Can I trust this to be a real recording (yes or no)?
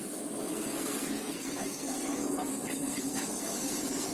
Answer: no